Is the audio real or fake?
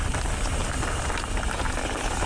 real